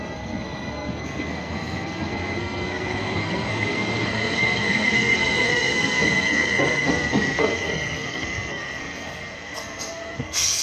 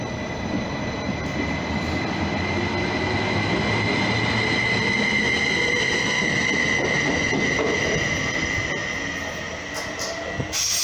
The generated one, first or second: first